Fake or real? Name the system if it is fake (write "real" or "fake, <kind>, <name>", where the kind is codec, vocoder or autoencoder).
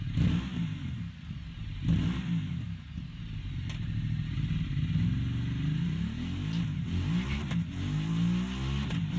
real